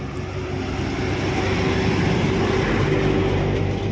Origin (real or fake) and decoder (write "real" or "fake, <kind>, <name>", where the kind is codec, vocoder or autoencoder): real